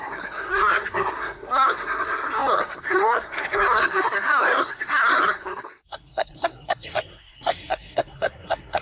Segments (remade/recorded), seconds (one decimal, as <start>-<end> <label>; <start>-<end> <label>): 0.0-8.8 remade